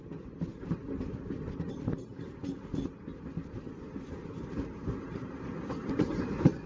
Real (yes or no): yes